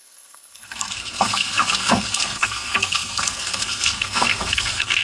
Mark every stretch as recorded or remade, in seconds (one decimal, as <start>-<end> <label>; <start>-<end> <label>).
0.0-5.0 remade